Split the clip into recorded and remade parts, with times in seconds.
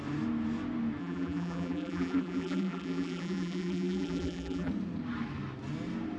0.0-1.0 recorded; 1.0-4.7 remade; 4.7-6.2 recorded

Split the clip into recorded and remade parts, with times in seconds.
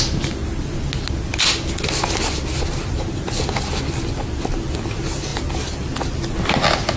0.0-7.0 recorded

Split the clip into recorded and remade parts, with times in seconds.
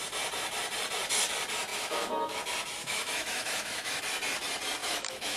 0.0-1.7 recorded; 1.7-2.4 remade; 2.4-2.8 recorded; 2.8-4.0 remade; 4.0-4.8 recorded; 4.8-5.4 remade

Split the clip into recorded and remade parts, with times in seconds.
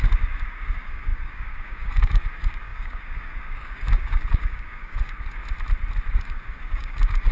0.0-5.4 remade; 5.4-6.1 recorded; 6.1-7.3 remade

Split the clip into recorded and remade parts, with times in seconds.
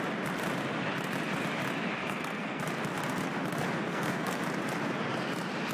0.0-2.0 recorded; 2.0-2.6 remade; 2.6-3.9 recorded; 3.9-4.4 remade; 4.4-5.7 recorded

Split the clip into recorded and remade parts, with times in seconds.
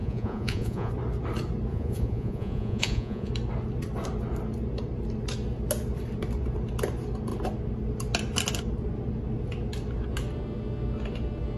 0.0-0.9 remade; 0.9-1.7 recorded; 1.7-3.3 remade; 3.3-11.6 recorded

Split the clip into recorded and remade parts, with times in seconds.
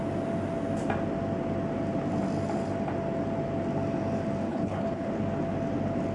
0.0-4.5 recorded; 4.5-5.1 remade; 5.1-6.1 recorded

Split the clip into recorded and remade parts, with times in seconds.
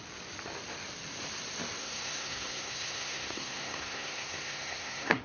0.0-1.8 recorded; 1.8-5.2 remade